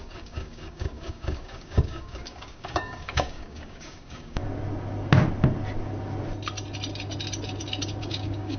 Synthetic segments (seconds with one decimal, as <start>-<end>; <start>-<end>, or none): 0.0-4.4; 8.0-8.6